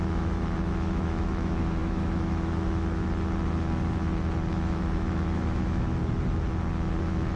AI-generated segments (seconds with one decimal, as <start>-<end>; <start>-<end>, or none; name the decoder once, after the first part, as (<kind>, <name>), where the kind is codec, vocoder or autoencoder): 0.0-3.0 (autoencoder, DAC-VAE); 4.5-6.0; 7.0-7.4